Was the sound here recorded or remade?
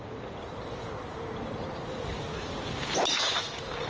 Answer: recorded